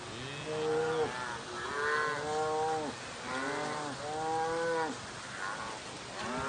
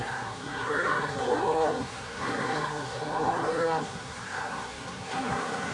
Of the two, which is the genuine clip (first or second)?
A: first